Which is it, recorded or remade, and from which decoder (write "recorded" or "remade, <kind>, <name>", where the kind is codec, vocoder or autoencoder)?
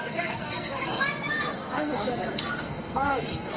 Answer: remade, codec, SNAC